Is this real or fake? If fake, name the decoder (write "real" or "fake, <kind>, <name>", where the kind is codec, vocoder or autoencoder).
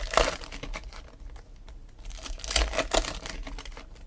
real